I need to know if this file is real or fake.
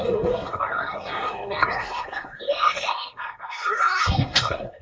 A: fake